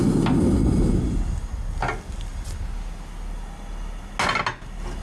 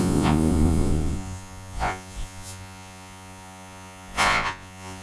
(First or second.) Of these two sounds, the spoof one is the second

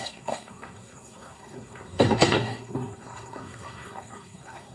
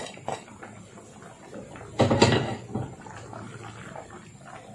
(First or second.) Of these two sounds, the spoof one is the first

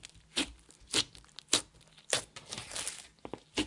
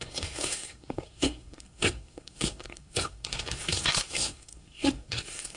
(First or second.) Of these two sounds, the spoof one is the second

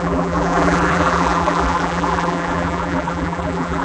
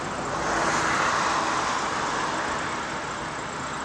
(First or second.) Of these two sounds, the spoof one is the first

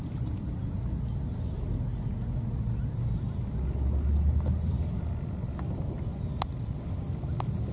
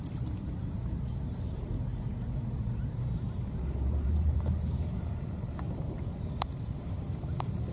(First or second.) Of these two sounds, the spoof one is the second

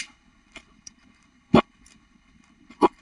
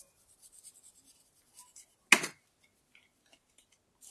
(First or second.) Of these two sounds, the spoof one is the first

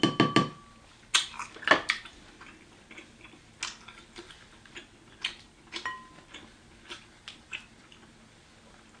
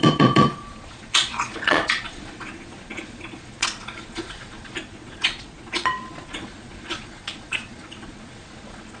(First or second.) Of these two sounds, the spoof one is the second